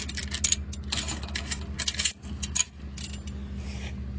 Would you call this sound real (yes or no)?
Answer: yes